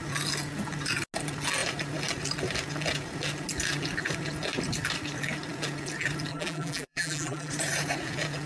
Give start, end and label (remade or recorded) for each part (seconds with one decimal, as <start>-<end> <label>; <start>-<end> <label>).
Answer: 0.0-6.3 recorded; 6.3-7.5 remade; 7.5-8.5 recorded